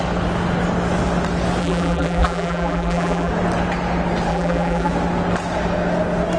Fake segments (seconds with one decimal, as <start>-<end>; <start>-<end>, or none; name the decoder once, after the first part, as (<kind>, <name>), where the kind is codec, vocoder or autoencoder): 1.6-3.3 (vocoder, BigVGAN v2); 4.3-4.9